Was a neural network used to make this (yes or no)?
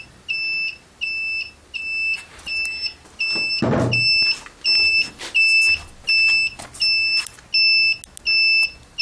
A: no